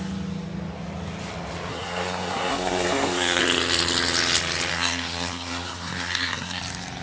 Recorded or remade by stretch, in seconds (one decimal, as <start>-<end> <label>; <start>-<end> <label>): 0.0-1.7 recorded; 1.7-3.4 remade; 3.4-4.7 recorded; 4.7-6.6 remade; 6.6-7.0 recorded